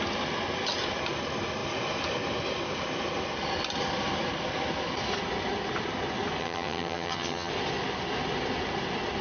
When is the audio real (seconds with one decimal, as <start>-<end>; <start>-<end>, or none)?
0.0-6.4; 7.5-9.2